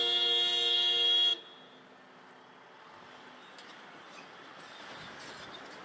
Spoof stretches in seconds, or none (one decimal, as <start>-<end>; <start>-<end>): none